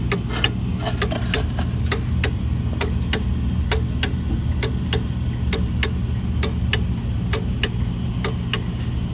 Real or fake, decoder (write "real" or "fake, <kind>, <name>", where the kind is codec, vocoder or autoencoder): real